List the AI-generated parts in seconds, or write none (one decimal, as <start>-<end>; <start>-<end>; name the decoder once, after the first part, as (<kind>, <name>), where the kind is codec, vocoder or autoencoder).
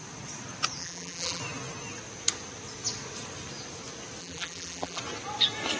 0.8-1.4 (vocoder, BigVGAN v2); 4.2-5.0